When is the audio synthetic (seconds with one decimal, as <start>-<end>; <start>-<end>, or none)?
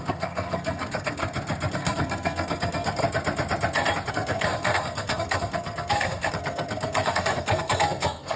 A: 0.0-1.2; 1.7-3.0; 4.1-8.4